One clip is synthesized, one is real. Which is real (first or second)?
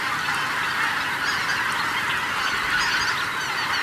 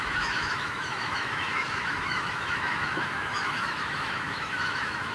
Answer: first